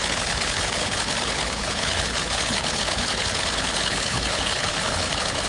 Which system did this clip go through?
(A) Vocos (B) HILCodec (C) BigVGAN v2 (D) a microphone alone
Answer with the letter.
B